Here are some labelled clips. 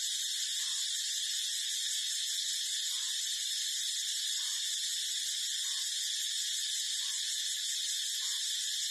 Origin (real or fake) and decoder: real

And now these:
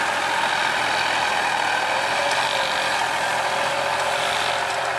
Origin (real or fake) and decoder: real